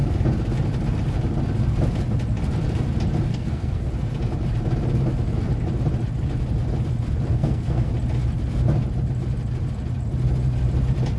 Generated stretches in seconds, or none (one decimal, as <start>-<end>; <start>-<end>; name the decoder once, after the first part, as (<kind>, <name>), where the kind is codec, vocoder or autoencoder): 3.3-3.9 (codec, SNAC); 7.3-7.9